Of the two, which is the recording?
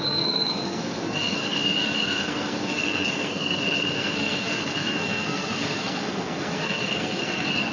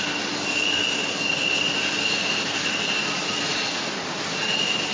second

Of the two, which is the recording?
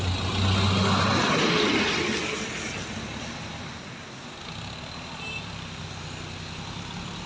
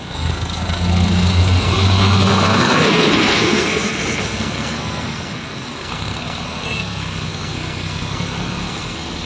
first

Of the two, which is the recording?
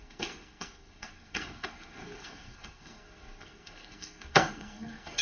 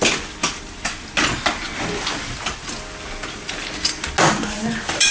second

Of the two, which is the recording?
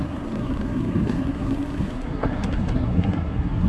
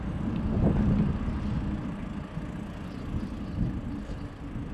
second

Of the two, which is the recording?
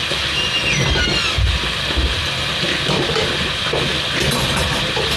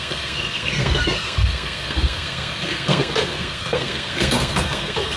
first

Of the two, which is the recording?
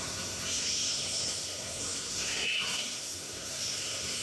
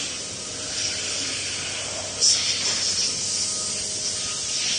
second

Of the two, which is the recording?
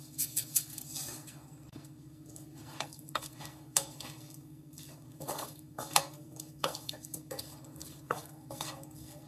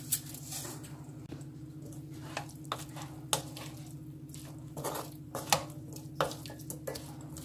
second